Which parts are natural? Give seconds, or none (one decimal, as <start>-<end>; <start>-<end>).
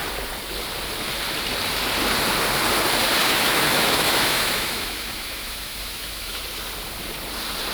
0.0-3.2; 6.4-7.7